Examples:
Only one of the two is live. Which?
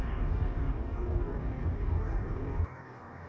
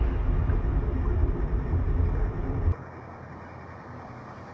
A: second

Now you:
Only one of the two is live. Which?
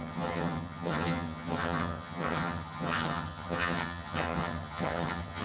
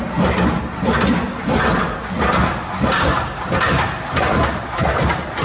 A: second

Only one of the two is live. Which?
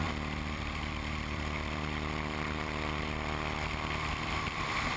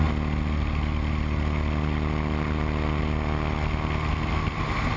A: second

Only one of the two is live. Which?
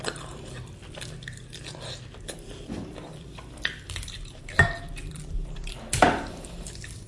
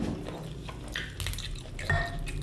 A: second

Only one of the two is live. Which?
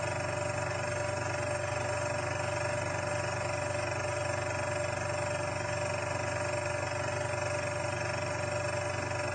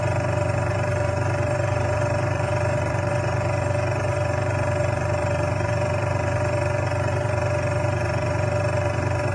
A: first